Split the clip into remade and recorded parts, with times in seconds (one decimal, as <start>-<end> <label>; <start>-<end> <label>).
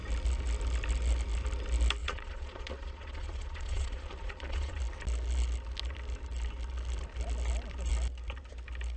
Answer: 0.0-2.0 recorded; 2.0-4.8 remade; 4.8-9.0 recorded